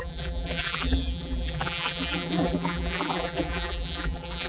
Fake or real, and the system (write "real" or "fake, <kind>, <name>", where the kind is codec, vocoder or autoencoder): fake, vocoder, BigVGAN v2